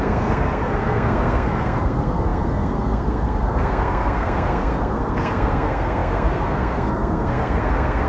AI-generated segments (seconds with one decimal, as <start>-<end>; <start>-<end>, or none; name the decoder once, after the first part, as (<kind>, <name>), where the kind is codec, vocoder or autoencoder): 0.0-8.1 (codec, SNAC)